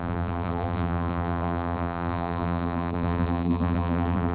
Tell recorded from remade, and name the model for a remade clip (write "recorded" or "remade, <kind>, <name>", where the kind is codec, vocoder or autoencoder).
remade, vocoder, BigVGAN v2